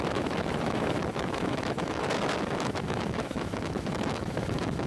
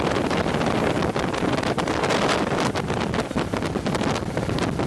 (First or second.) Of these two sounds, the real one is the second